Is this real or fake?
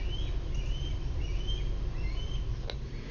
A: real